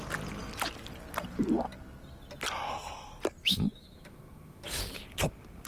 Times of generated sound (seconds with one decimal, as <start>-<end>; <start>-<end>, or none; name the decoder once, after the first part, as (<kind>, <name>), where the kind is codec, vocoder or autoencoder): 3.4-4.8 (autoencoder, DAC-VAE)